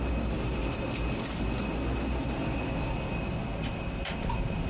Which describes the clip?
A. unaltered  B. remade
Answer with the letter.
A